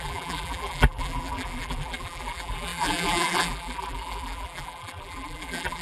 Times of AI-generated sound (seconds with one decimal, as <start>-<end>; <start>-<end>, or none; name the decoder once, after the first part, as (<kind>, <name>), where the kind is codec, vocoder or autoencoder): 0.0-5.8 (vocoder, BigVGAN v2)